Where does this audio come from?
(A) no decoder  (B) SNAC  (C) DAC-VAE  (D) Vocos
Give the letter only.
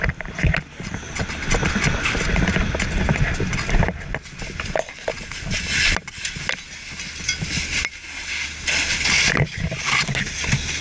A